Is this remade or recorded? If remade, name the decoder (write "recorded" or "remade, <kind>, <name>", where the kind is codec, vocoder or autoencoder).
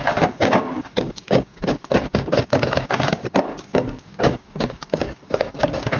remade, codec, DAC